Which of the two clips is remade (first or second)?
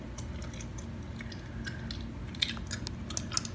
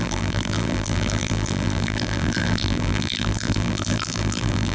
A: second